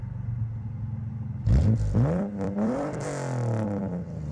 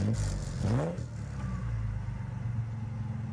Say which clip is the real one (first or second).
second